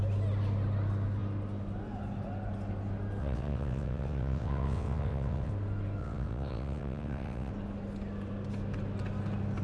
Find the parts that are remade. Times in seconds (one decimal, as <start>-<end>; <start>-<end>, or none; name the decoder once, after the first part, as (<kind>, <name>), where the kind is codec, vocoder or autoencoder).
3.2-5.5 (vocoder, WaveNeXt); 6.0-7.5

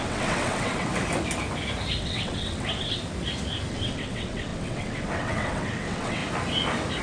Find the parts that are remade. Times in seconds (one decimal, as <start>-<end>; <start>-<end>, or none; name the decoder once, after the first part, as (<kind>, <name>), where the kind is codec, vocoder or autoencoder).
0.0-0.9 (vocoder, WaveNeXt); 2.0-3.0; 3.7-6.2